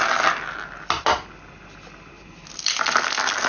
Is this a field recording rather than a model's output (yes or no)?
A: yes